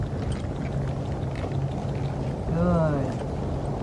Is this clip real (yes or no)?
yes